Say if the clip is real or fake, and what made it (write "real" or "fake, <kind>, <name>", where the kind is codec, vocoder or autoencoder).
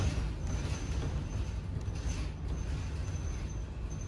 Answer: real